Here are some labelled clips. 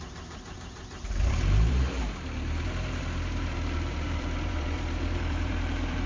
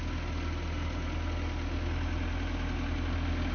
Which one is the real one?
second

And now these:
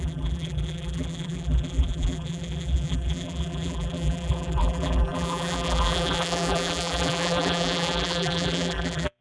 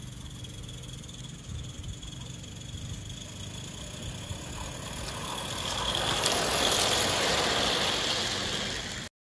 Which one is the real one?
second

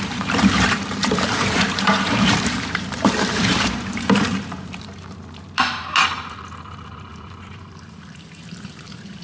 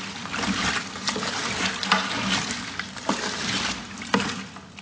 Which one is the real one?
second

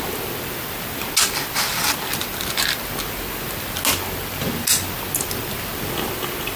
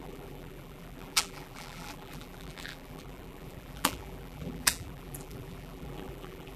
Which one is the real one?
first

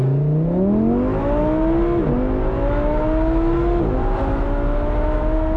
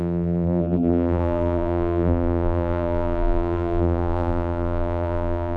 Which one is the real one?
first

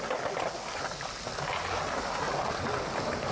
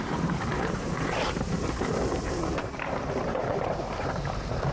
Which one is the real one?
first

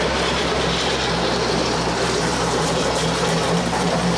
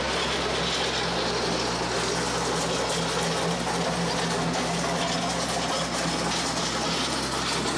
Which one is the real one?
second